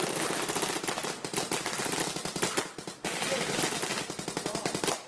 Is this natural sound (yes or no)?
yes